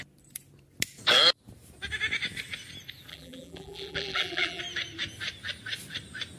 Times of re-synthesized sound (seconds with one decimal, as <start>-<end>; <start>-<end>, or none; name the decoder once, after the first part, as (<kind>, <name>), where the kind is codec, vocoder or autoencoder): 3.1-4.6 (vocoder, BigVGAN v2)